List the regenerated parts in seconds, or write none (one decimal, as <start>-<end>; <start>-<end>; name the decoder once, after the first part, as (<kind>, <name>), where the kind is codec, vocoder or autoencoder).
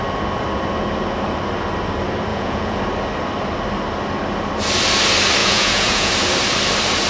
2.3-2.8 (vocoder, Vocos); 5.4-6.1